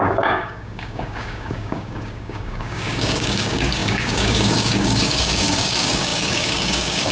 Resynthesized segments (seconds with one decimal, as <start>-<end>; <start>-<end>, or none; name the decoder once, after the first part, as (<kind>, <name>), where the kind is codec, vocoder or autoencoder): 0.0-7.1 (codec, DAC)